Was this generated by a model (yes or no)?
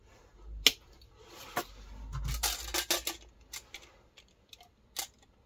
no